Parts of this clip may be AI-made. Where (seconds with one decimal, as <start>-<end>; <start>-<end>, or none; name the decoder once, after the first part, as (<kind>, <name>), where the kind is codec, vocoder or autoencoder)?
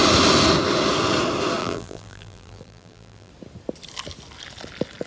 1.6-3.3 (vocoder, BigVGAN v2)